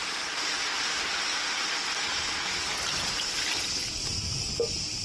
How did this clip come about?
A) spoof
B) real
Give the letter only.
B